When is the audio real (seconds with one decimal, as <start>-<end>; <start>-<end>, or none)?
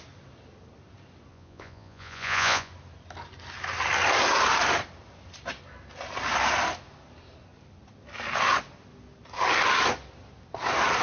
0.0-1.3; 2.7-11.0